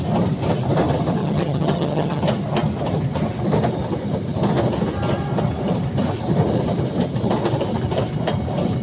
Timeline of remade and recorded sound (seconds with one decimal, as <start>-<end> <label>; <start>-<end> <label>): 0.0-1.2 recorded; 1.2-2.2 remade; 2.2-8.8 recorded